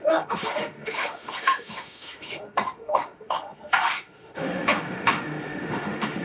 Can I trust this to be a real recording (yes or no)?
no